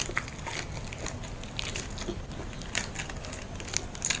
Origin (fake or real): real